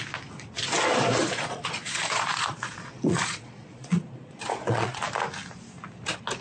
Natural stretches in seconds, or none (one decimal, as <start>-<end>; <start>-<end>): 0.0-1.2; 5.0-6.4